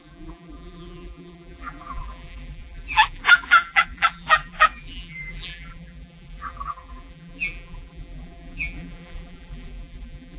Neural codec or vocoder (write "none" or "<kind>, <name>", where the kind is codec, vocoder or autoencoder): vocoder, BigVGAN v2